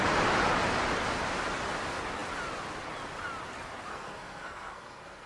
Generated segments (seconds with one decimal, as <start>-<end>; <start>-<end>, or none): 3.9-5.3